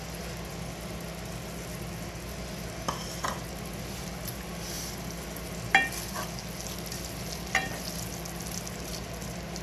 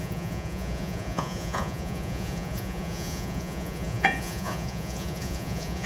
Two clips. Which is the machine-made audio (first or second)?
second